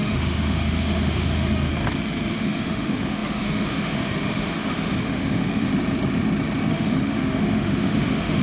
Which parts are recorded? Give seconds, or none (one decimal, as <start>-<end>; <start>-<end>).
1.7-2.3; 5.7-6.7